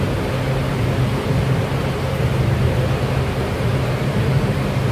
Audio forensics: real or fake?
real